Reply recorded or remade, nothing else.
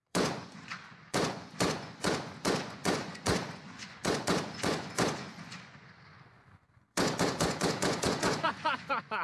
remade